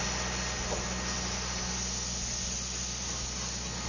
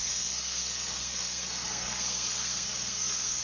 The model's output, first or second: second